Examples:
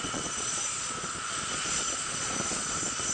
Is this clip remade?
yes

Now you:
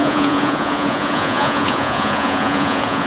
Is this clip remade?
yes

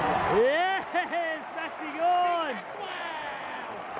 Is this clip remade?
no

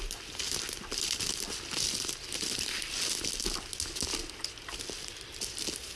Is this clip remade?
no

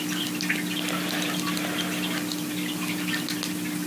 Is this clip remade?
no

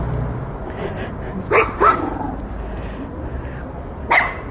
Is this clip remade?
no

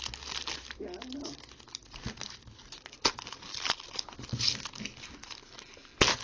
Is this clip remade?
no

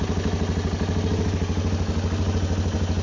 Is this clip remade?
no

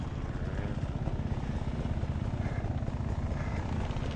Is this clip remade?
no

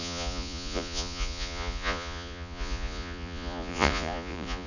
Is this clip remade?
yes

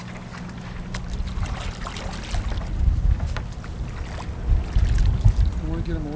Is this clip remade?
no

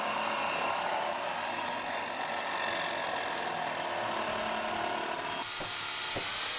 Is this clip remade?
no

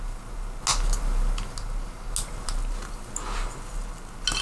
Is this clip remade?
no